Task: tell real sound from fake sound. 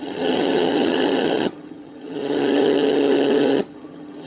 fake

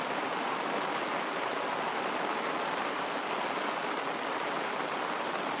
real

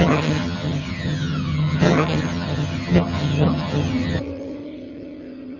fake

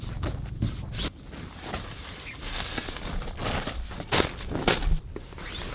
real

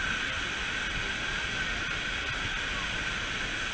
real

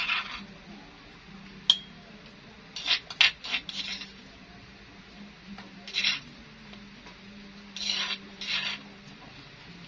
real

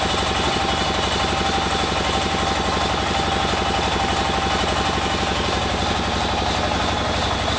real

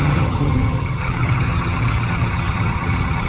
fake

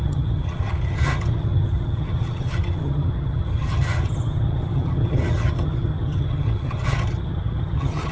fake